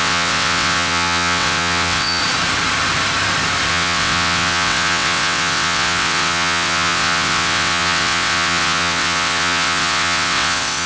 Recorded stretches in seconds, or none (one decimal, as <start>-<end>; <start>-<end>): 2.2-3.7